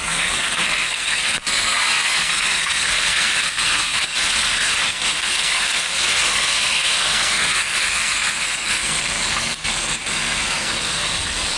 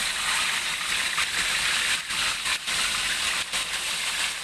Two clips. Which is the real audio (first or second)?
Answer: second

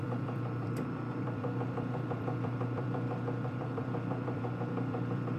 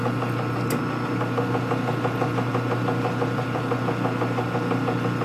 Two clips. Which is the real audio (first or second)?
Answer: second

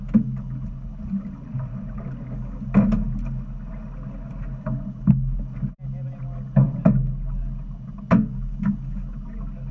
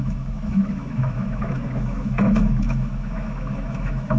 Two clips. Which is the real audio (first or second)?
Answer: first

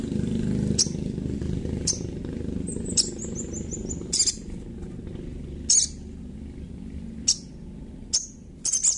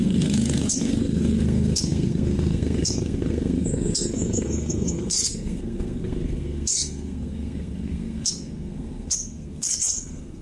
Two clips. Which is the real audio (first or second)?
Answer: first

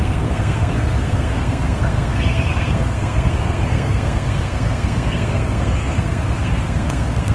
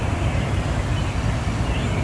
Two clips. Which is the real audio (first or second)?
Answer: second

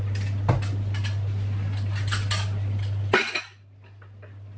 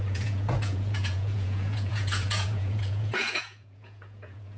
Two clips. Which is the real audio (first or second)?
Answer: first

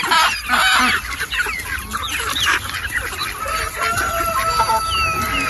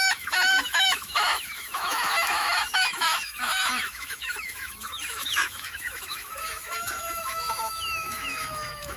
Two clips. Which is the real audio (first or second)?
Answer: first